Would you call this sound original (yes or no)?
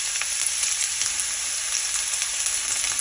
yes